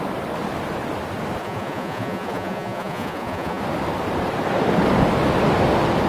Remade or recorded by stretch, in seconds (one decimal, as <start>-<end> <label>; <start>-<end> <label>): 0.0-1.4 recorded; 1.4-3.6 remade; 3.6-6.1 recorded